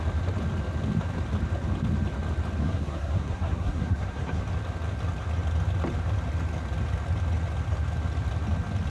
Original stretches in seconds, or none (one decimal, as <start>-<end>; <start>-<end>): 0.0-2.6; 4.4-8.9